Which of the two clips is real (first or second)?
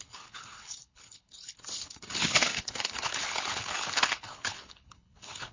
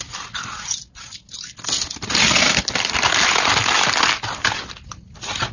second